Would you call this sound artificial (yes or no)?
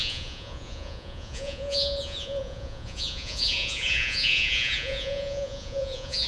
yes